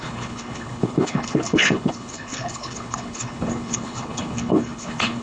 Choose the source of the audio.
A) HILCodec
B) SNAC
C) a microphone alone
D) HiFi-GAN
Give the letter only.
A